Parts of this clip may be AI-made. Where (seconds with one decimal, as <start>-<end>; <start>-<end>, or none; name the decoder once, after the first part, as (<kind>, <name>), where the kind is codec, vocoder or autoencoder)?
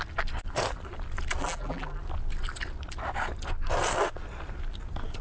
1.4-2.0 (vocoder, BigVGAN v2)